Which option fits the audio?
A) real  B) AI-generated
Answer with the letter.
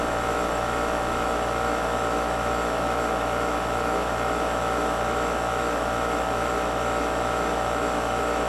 B